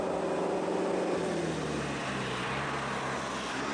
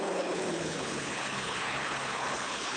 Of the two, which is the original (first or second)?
first